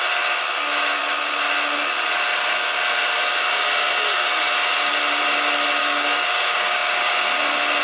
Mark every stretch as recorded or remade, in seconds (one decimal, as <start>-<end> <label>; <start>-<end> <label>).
0.0-5.8 recorded; 5.8-7.2 remade; 7.2-7.8 recorded